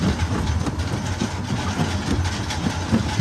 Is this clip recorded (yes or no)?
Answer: yes